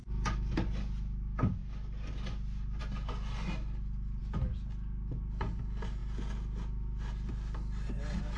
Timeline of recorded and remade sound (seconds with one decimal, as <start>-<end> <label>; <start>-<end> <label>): 0.0-8.4 recorded